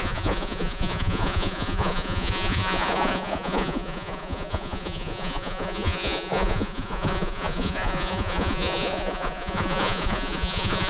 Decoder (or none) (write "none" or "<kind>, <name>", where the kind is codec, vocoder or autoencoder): vocoder, Vocos